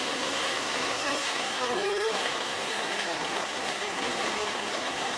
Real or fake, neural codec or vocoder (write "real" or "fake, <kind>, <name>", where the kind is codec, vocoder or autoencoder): fake, codec, SNAC